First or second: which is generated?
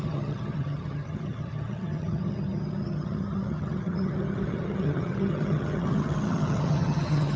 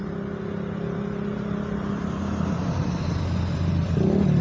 first